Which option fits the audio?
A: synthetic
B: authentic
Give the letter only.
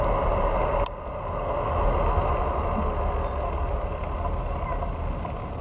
B